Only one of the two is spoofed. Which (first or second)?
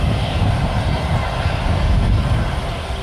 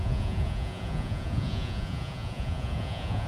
second